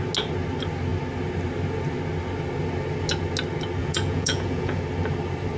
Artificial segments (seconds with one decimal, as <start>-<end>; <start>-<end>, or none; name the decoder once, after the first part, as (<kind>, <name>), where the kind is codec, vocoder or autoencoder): 3.8-4.8 (vocoder, Vocos)